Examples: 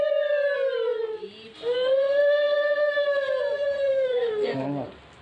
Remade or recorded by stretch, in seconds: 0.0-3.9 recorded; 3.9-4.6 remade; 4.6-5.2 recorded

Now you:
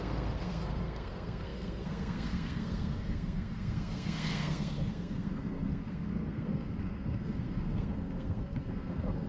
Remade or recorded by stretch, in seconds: 0.0-9.3 remade

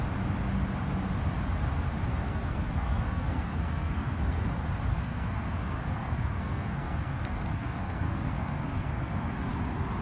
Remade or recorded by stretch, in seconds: 0.0-2.1 recorded; 2.1-4.5 remade; 4.5-4.9 recorded; 4.9-9.3 remade; 9.3-10.0 recorded

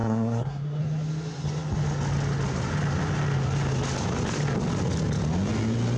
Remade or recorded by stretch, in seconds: 0.0-0.8 remade; 0.8-6.0 recorded